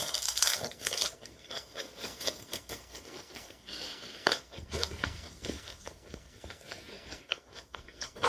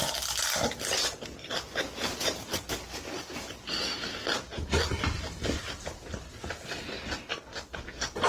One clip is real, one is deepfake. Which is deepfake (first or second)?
first